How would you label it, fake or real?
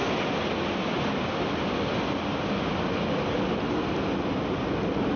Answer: real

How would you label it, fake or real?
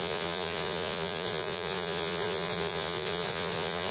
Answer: fake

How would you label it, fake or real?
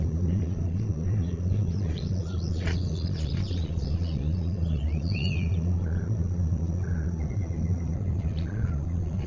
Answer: fake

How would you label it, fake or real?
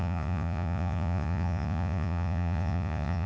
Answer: fake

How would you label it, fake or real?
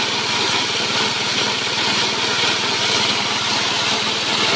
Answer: real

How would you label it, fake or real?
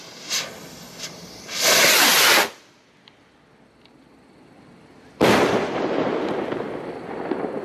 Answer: real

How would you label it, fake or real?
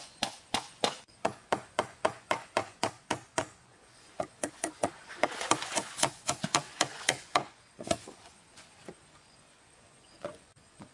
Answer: fake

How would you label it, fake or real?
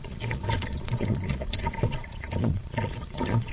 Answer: fake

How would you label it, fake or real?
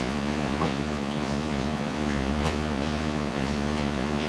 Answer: fake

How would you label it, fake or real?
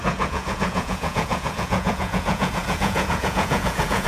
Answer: fake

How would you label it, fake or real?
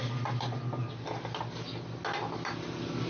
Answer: real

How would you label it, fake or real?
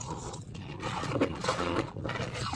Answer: fake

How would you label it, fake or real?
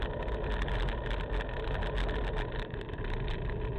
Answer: real